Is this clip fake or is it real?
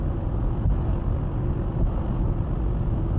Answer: real